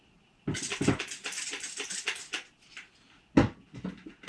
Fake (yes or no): no